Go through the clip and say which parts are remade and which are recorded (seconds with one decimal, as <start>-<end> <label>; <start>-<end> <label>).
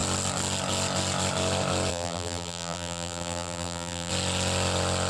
0.0-1.9 recorded; 1.9-4.1 remade; 4.1-5.1 recorded